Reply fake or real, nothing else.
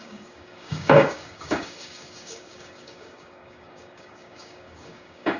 fake